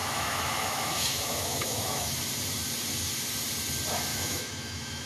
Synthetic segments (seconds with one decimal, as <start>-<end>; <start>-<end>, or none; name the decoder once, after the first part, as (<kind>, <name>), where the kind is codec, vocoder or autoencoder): 0.0-2.2 (autoencoder, DAC-VAE); 4.1-5.1